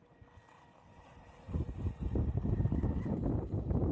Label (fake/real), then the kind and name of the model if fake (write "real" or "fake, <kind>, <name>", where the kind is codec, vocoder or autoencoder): real